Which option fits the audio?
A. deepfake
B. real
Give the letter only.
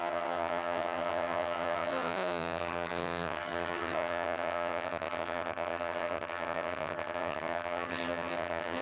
A